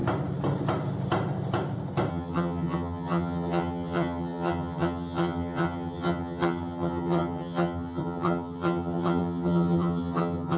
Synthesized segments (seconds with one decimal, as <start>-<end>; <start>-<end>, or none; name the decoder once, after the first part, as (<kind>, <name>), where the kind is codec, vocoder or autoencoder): 2.1-10.6 (vocoder, HiFi-GAN)